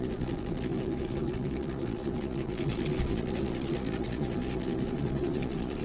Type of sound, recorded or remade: remade